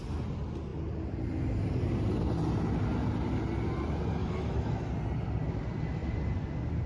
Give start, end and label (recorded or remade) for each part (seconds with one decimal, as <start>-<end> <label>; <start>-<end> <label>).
0.0-4.2 recorded; 4.2-4.9 remade; 4.9-6.9 recorded